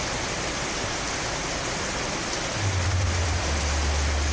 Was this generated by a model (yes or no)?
no